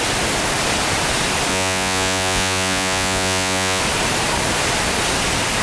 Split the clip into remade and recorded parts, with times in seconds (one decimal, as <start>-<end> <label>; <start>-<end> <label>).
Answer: 0.0-1.5 recorded; 1.5-3.8 remade; 3.8-5.6 recorded